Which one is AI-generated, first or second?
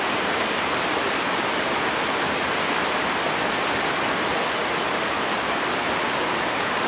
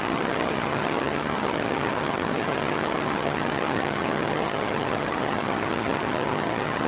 second